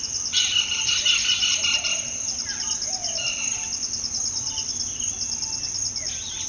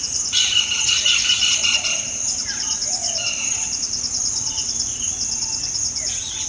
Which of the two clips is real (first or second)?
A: first